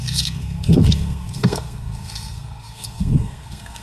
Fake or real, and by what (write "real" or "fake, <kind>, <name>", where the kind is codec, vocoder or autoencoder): fake, codec, SNAC